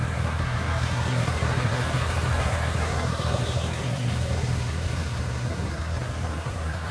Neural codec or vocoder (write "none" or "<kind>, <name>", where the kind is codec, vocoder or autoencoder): codec, SNAC